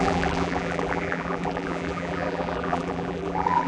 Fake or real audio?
fake